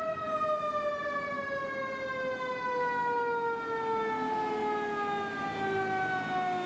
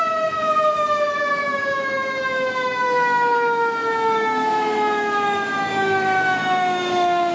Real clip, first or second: first